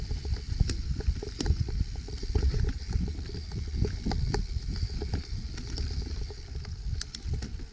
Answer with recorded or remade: recorded